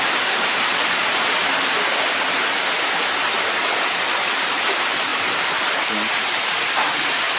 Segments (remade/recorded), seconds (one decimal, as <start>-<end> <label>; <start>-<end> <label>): 0.0-1.4 remade; 1.4-4.5 recorded; 4.5-5.1 remade; 5.1-6.1 recorded; 6.1-7.4 remade